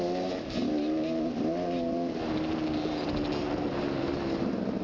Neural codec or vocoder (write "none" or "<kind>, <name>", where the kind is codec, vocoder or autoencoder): none